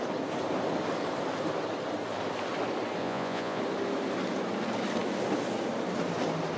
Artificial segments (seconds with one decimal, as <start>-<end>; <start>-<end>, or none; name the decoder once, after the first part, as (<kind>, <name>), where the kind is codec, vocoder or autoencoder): 3.0-3.6 (vocoder, Vocos)